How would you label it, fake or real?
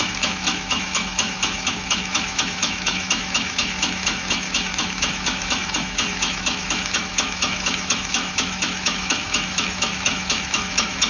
fake